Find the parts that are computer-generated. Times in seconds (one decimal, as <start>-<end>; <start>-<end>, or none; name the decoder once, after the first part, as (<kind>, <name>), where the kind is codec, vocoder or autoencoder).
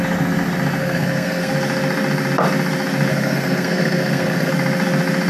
0.8-1.5 (codec, SNAC); 3.1-4.5